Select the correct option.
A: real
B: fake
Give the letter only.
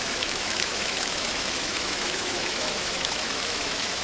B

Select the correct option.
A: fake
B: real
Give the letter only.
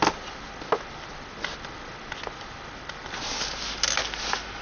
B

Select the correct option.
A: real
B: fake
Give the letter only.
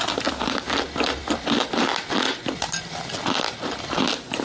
A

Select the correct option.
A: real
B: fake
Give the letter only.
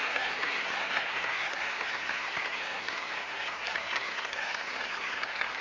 B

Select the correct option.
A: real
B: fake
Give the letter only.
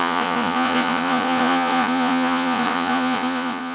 B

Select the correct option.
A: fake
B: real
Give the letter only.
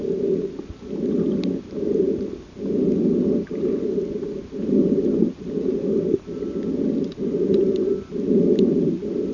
B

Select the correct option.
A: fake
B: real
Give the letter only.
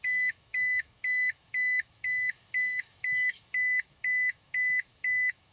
A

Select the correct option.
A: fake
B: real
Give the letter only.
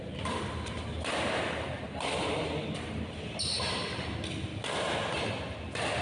B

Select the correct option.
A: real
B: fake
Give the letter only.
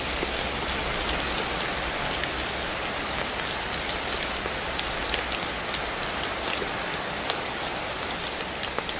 A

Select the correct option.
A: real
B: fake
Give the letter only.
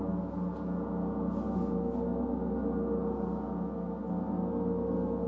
A